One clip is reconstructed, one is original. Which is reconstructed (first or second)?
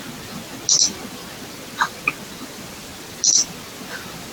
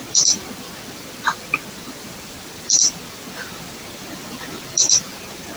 second